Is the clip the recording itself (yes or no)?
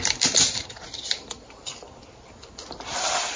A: yes